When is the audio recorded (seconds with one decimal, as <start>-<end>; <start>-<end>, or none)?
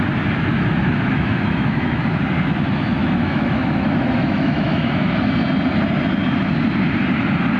0.0-0.5; 2.0-3.0; 5.3-7.6